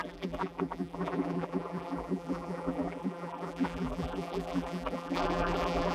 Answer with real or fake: fake